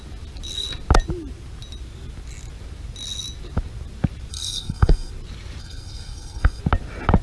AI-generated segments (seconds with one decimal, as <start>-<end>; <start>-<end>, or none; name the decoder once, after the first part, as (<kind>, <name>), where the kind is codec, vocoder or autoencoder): 4.3-5.1 (codec, SNAC); 5.6-6.6